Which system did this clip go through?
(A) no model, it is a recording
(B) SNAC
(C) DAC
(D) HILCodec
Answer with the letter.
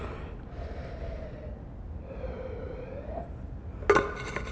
A